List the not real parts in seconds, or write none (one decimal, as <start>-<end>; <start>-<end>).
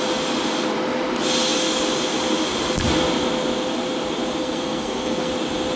4.4-5.3